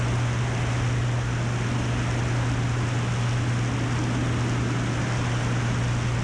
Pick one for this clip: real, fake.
real